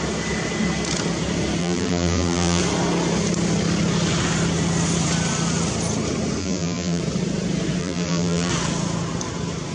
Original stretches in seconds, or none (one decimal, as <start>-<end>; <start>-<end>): 0.0-1.6; 2.6-6.4; 7.0-7.8; 8.5-9.7